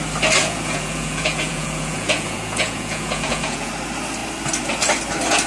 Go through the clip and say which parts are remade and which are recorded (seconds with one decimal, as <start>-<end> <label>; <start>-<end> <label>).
0.0-0.4 recorded; 0.4-3.7 remade; 3.7-5.5 recorded